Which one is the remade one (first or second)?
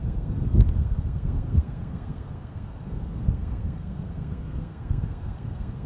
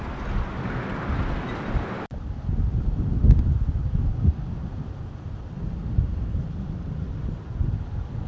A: first